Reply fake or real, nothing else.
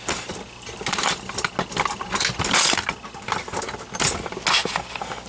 real